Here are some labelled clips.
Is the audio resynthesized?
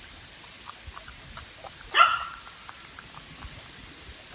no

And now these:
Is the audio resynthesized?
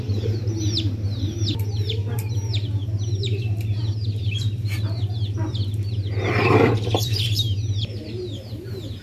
yes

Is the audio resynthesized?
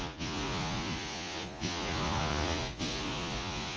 yes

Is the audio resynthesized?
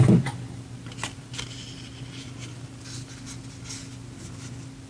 no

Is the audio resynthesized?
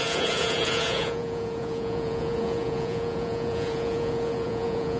yes